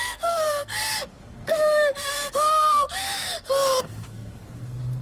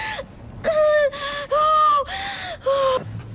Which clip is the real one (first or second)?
second